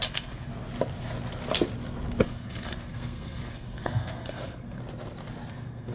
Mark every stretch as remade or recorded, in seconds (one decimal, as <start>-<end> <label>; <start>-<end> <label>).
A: 0.0-0.5 remade; 0.5-2.2 recorded; 2.2-4.8 remade; 4.8-5.5 recorded; 5.5-5.9 remade